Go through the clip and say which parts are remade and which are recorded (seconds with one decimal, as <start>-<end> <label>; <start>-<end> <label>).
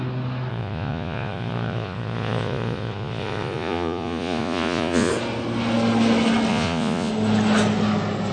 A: 0.0-0.5 recorded; 0.5-5.1 remade; 5.1-6.5 recorded; 6.5-7.1 remade; 7.1-8.3 recorded